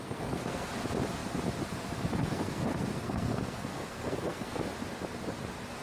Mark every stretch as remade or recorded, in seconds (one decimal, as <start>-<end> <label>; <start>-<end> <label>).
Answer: 0.0-0.7 remade; 0.7-2.2 recorded; 2.2-4.6 remade; 4.6-5.8 recorded